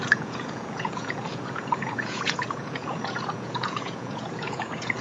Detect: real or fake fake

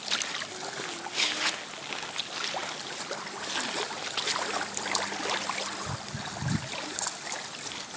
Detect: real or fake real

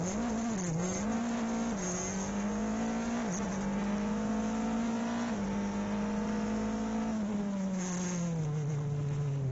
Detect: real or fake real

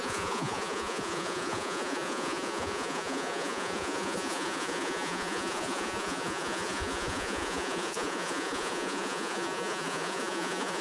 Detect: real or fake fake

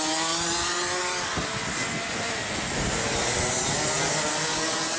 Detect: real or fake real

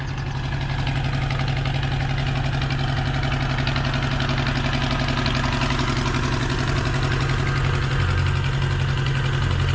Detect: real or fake real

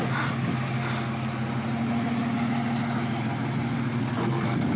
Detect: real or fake real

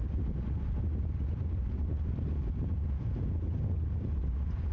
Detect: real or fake real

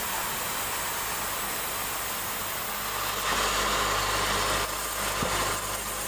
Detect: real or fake real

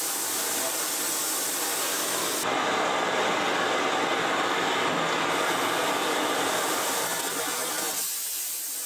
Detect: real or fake real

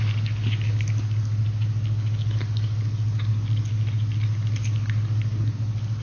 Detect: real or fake real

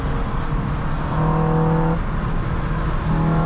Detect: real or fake real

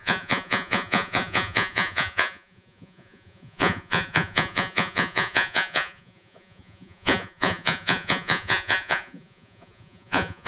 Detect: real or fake fake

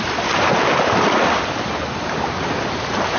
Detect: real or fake real